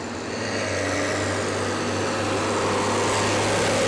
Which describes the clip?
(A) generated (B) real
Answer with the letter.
B